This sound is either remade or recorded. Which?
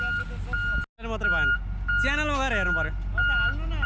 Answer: recorded